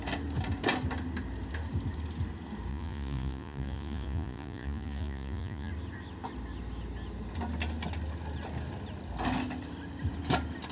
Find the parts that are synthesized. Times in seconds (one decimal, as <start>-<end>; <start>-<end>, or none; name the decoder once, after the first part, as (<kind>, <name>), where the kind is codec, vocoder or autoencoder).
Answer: 2.7-5.7 (vocoder, Vocos)

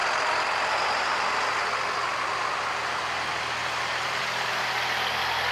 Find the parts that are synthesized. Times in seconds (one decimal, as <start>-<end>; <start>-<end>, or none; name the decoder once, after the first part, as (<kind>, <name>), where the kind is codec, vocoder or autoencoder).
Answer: none